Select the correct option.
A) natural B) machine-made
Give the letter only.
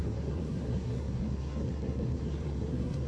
B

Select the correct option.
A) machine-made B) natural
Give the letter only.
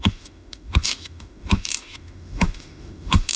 A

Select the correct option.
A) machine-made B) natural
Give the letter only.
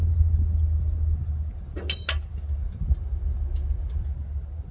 B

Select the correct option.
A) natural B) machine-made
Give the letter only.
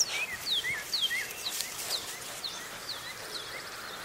A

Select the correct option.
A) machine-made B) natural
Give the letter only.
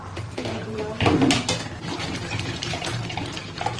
A